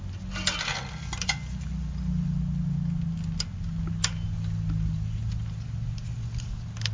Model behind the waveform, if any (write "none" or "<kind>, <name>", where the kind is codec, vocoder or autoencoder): none